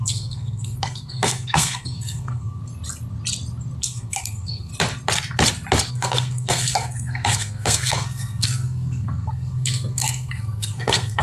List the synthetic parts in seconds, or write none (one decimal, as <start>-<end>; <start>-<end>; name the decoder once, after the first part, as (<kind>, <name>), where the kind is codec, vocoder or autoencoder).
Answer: 0.0-2.6 (codec, SNAC); 3.8-4.7; 5.9-11.2